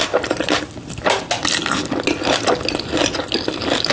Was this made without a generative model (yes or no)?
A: yes